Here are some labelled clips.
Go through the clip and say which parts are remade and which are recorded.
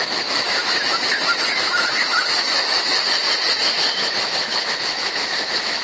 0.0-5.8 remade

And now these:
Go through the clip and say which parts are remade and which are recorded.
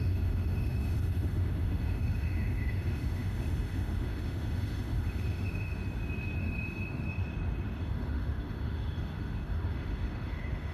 0.0-5.8 remade; 5.8-6.4 recorded; 6.4-7.2 remade; 7.2-7.8 recorded; 7.8-10.7 remade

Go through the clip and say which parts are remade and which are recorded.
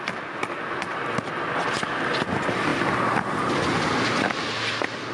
0.0-5.1 recorded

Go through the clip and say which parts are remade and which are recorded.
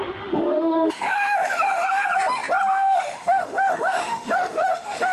0.0-2.1 remade; 2.1-2.7 recorded; 2.7-5.1 remade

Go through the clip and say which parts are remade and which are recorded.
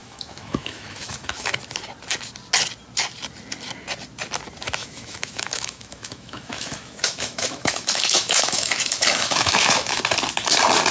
0.0-1.6 remade; 1.6-4.8 recorded; 4.8-10.0 remade; 10.0-10.9 recorded